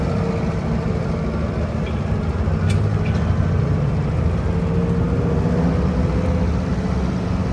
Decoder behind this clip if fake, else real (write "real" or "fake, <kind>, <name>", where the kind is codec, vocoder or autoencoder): real